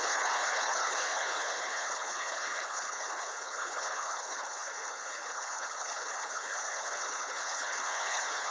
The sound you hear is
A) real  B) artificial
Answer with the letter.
B